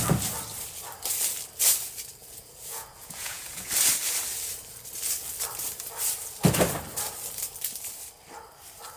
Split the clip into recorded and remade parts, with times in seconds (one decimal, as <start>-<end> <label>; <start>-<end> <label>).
0.0-2.2 recorded; 2.2-3.7 remade; 3.7-9.0 recorded